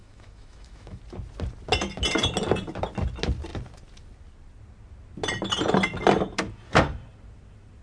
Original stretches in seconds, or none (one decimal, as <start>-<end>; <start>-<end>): 1.0-7.8